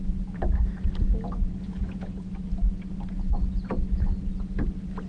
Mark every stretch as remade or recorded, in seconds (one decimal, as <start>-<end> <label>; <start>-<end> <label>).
0.0-1.5 recorded; 1.5-2.2 remade; 2.2-5.1 recorded